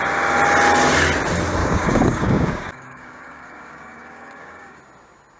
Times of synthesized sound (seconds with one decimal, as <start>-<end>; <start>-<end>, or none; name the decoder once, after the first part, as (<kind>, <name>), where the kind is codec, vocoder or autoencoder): 1.6-4.8 (codec, DAC)